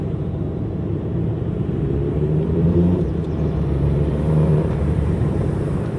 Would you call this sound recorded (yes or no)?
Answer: no